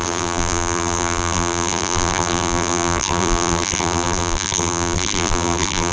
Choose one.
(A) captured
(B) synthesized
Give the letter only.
B